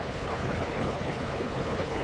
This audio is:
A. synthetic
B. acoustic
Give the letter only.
A